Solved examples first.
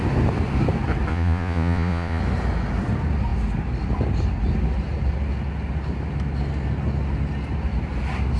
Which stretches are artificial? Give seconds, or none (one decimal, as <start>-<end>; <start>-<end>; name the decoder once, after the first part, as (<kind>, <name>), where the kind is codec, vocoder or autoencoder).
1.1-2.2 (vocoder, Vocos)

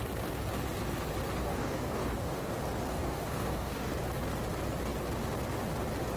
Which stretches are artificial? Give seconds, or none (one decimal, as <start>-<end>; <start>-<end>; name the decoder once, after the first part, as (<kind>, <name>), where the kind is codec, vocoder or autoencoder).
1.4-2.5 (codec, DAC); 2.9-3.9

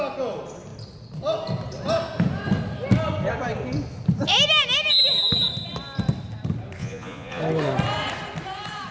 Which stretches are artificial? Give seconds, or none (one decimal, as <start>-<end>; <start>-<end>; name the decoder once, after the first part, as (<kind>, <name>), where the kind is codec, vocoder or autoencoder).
6.8-7.4 (vocoder, Vocos)

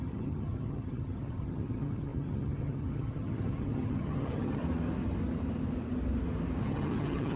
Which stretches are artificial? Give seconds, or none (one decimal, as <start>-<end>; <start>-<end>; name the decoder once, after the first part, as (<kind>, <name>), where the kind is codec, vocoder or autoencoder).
0.0-4.6 (vocoder, HiFi-GAN); 6.6-7.4

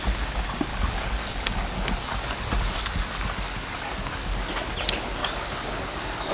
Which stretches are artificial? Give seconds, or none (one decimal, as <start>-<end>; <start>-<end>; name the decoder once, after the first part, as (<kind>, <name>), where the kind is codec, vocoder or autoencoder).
0.7-4.5 (codec, DAC); 5.2-6.3

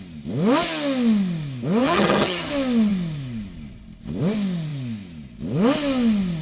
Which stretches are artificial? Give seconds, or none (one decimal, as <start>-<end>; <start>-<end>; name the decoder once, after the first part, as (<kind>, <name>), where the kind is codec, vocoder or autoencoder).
1.8-2.5 (vocoder, HiFi-GAN)

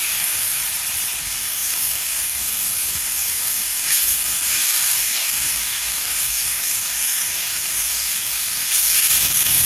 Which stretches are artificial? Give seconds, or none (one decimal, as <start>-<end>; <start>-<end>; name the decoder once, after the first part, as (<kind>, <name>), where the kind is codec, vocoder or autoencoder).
0.0-0.6 (codec, DAC); 1.2-9.7

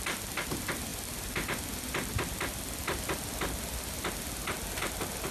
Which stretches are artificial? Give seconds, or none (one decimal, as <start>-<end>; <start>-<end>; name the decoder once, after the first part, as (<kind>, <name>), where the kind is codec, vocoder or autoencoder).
none